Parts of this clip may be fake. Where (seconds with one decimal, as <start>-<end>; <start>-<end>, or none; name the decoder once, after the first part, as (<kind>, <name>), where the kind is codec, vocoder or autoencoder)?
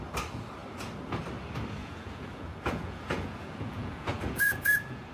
1.8-5.1 (vocoder, Vocos)